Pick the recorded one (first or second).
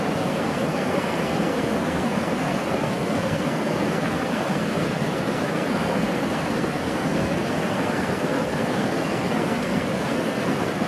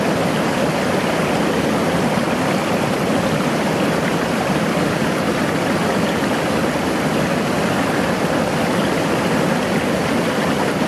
second